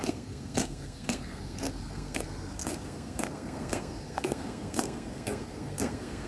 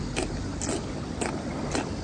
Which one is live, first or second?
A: second